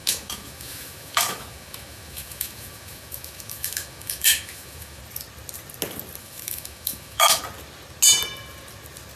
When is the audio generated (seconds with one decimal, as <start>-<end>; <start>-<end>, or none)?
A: 0.0-5.0; 6.2-7.4